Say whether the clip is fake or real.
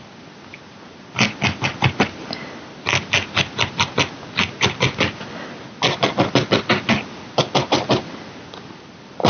real